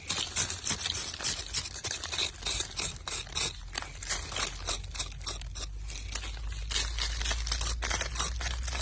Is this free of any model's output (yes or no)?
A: yes